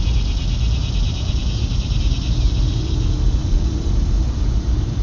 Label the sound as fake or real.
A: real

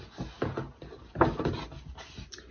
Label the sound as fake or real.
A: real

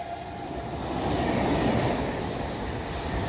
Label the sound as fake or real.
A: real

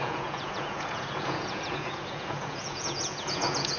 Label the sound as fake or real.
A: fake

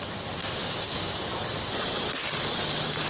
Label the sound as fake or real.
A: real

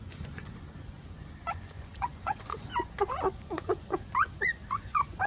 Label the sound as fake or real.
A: fake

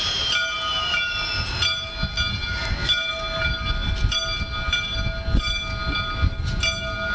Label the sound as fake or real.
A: real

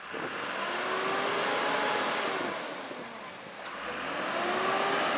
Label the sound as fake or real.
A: real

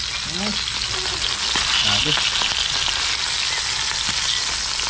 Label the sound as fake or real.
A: real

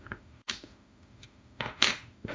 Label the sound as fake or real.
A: fake